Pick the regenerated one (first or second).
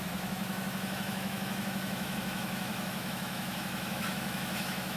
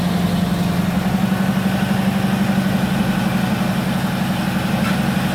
first